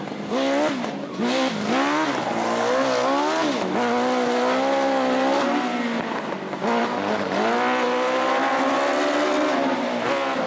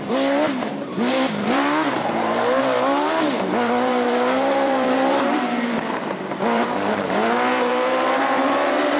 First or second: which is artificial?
second